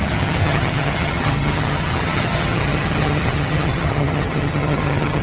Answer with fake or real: fake